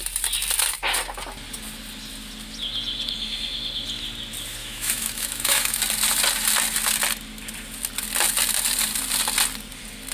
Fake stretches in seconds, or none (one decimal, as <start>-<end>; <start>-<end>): 4.6-5.8